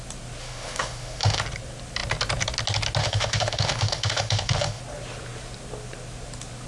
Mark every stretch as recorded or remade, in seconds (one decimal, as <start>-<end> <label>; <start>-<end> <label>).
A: 0.0-0.4 recorded; 0.4-1.4 remade; 1.4-3.0 recorded; 3.0-4.8 remade; 4.8-6.7 recorded